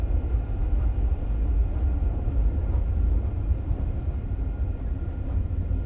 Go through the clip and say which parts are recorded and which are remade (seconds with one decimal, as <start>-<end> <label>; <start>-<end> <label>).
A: 0.0-5.9 recorded